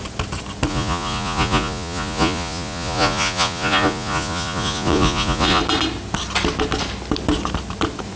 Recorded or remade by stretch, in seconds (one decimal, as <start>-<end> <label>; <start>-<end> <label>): 0.0-0.7 recorded; 0.7-5.6 remade; 5.6-8.2 recorded